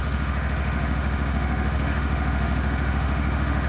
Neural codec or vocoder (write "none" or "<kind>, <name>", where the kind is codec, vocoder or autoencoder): autoencoder, DAC-VAE